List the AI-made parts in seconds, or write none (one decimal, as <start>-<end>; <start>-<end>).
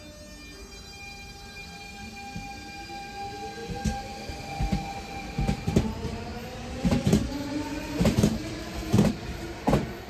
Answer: none